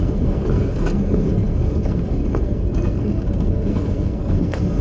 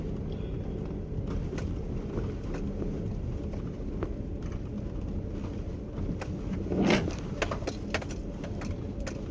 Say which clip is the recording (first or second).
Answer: second